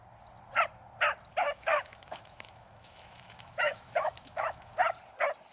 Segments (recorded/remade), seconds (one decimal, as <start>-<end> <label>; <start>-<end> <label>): 0.0-1.4 recorded; 1.4-4.7 remade; 4.7-5.5 recorded